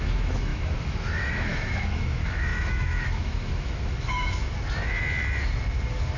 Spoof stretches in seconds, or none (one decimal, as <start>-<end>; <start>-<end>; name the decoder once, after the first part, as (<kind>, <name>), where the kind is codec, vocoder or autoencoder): 0.0-4.4 (autoencoder, DAC-VAE)